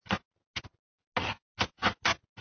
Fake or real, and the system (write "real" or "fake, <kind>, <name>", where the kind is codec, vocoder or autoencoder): real